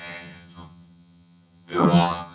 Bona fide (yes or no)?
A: no